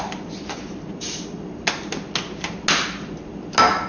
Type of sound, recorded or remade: recorded